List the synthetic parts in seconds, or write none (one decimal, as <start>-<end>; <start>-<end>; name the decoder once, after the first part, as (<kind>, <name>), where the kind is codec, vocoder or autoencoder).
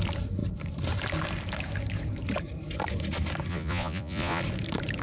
3.5-4.4 (vocoder, Vocos)